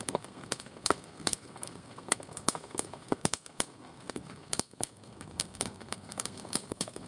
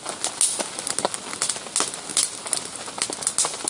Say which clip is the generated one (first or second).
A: first